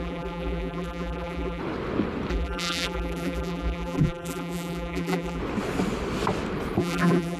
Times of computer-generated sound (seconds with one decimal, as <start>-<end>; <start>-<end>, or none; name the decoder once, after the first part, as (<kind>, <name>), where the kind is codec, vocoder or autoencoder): 0.0-1.6 (vocoder, BigVGAN v2); 2.3-5.4; 6.8-7.4